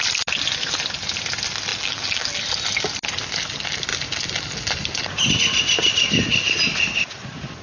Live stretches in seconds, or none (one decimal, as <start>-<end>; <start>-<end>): 0.0-1.7; 2.4-7.6